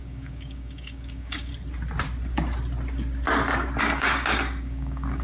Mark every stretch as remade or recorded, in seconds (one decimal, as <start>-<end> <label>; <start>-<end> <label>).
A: 0.0-1.5 remade; 1.5-3.8 recorded; 3.8-5.2 remade